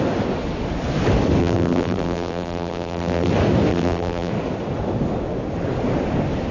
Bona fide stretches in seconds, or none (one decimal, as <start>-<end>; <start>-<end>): 0.0-1.4; 3.3-3.7; 4.3-6.5